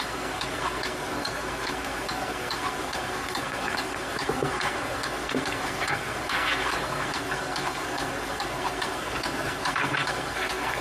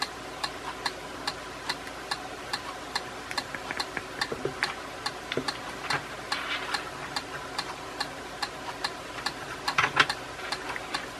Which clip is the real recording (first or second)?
second